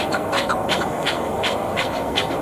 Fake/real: fake